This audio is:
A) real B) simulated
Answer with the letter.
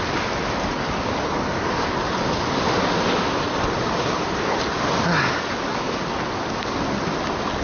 A